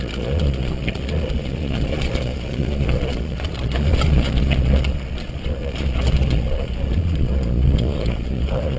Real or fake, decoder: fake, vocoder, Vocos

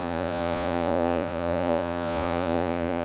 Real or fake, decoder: fake, vocoder, Vocos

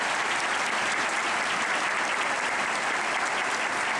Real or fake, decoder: real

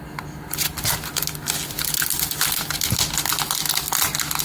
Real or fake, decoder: real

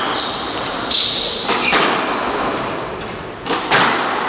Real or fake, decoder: real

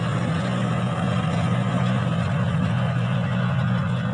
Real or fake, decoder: fake, vocoder, Vocos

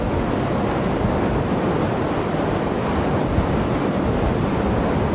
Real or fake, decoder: real